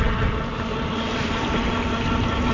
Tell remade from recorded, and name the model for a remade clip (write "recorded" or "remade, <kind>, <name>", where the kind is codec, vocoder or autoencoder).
recorded